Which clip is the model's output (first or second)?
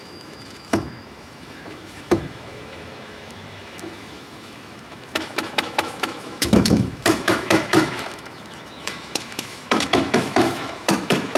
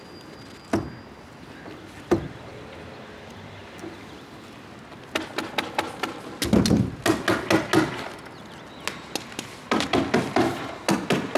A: first